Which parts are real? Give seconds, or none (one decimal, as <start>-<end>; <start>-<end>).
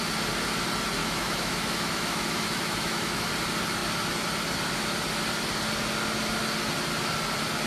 0.0-1.0; 3.3-7.7